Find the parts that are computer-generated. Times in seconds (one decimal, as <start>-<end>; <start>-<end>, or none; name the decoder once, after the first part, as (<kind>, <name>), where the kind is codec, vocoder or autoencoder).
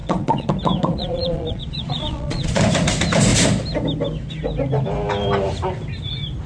0.0-0.5 (vocoder, Vocos); 0.9-2.6